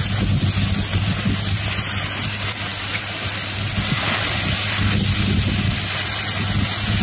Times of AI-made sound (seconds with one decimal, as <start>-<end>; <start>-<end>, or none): none